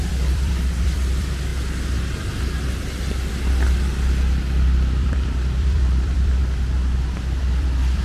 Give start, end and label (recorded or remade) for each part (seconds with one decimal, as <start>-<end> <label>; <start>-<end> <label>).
0.0-1.5 remade; 1.5-4.9 recorded; 4.9-6.4 remade; 6.4-7.4 recorded; 7.4-8.0 remade